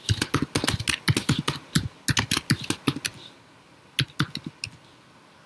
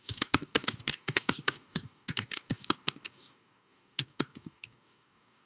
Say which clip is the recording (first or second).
first